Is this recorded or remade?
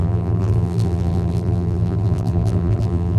remade